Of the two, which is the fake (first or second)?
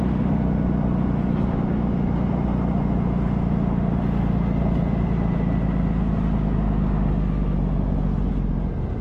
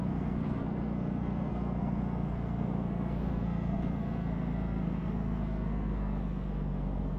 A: second